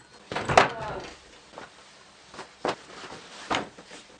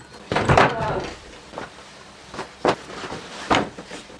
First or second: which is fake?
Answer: second